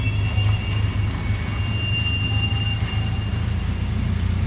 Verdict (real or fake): real